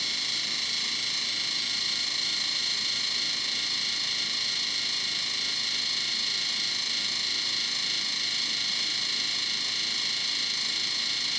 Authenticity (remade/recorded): recorded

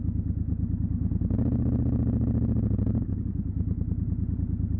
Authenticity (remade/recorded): recorded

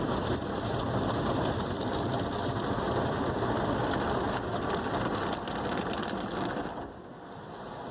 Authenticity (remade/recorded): recorded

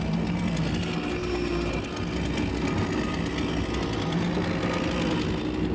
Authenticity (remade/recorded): recorded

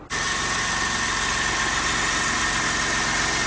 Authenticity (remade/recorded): recorded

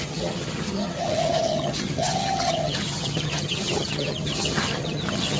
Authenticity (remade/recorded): remade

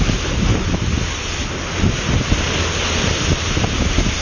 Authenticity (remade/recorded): recorded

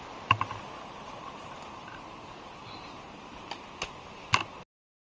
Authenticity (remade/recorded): recorded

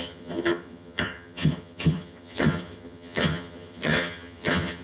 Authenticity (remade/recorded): remade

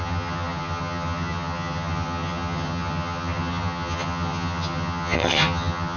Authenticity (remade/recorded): remade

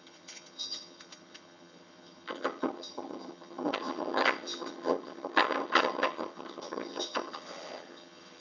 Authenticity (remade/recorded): remade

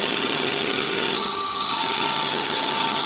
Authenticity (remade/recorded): remade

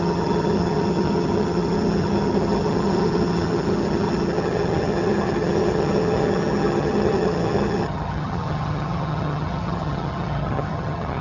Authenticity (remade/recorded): remade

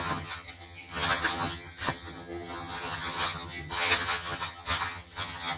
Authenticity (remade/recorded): remade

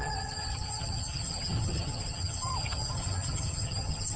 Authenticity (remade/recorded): remade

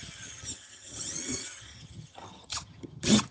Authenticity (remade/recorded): remade